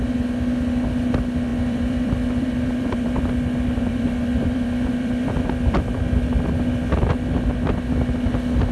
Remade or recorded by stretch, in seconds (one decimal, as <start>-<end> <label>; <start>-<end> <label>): 0.0-1.5 recorded; 1.5-6.0 remade; 6.0-8.7 recorded

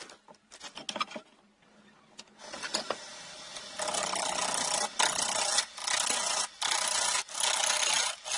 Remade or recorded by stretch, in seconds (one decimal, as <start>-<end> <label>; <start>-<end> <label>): 0.0-8.4 recorded

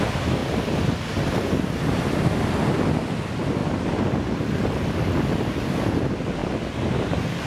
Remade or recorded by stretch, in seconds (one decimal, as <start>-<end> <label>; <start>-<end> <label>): 0.0-3.6 recorded; 3.6-4.4 remade; 4.4-7.5 recorded

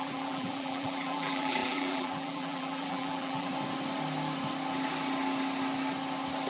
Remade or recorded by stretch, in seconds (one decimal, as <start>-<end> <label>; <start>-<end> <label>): 0.0-3.5 remade; 3.5-6.5 recorded

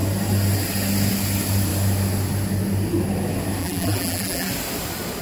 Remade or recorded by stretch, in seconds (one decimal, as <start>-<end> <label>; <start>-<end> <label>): 0.0-3.6 recorded; 3.6-4.5 remade; 4.5-5.2 recorded

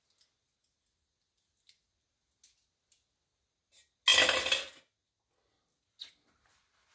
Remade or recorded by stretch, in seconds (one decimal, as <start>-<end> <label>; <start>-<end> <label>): 0.0-6.9 recorded

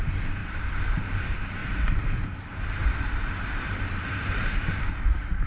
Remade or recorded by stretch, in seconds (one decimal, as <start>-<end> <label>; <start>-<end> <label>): 0.0-0.4 recorded; 0.4-1.0 remade; 1.0-1.6 recorded; 1.6-4.9 remade; 4.9-5.5 recorded

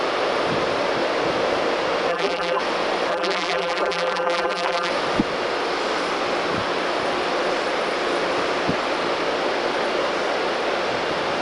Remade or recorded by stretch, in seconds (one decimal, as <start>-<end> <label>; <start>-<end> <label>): 0.0-2.1 recorded; 2.1-2.6 remade; 2.6-3.1 recorded; 3.1-4.9 remade; 4.9-11.4 recorded